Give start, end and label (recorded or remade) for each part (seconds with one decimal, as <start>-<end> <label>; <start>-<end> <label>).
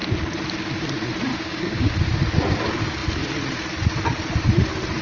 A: 0.0-1.3 recorded; 1.3-1.9 remade; 1.9-5.0 recorded